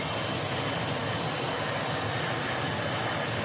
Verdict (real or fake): real